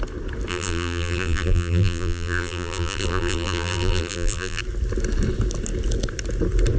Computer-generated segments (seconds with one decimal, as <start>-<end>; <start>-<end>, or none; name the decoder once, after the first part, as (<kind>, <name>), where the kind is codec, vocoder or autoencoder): 0.5-4.6 (vocoder, BigVGAN v2)